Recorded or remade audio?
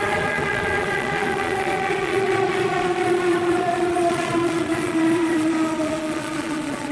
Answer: remade